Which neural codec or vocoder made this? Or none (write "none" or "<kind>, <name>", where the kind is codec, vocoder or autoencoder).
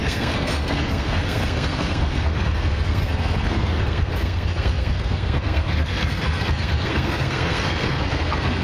codec, SNAC